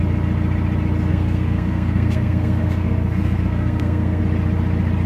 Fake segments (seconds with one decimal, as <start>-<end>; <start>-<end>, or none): 1.1-4.2

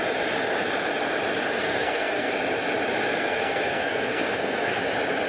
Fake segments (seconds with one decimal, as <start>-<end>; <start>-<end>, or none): 1.6-2.3; 3.1-4.8

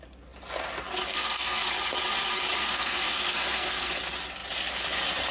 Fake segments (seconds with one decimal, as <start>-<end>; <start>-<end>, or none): 1.1-1.7; 2.6-3.9

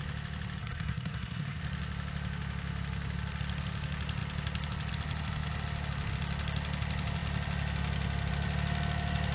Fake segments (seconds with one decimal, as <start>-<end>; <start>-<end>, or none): 0.6-1.6

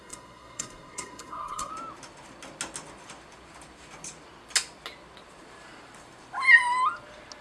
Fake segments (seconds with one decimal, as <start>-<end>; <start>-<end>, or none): 0.0-1.7

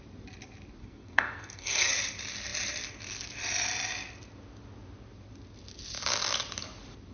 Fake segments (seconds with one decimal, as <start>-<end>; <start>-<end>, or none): 0.8-1.9

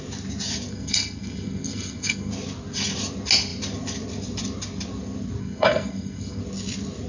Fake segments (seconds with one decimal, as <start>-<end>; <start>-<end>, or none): 0.7-2.3; 5.4-6.4